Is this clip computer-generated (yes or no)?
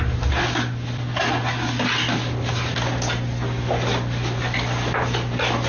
no